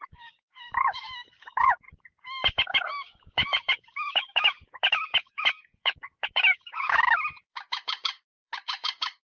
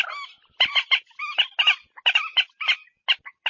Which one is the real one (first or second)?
second